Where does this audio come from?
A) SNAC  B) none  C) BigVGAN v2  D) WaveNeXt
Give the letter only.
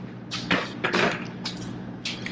B